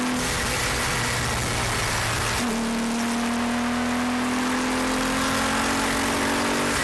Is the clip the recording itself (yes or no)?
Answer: yes